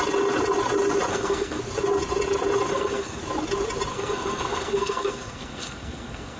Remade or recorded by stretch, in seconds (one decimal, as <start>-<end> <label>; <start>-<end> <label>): 0.0-1.1 recorded; 1.1-1.6 remade; 1.6-2.7 recorded; 2.7-3.2 remade; 3.2-3.9 recorded; 3.9-6.4 remade